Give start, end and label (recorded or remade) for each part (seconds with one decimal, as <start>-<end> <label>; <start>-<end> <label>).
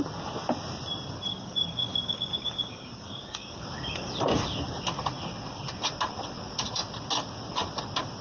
0.0-1.3 recorded; 1.3-3.6 remade; 3.6-8.2 recorded